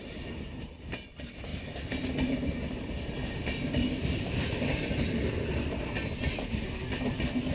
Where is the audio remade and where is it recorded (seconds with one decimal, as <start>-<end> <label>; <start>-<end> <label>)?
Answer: 0.0-7.5 recorded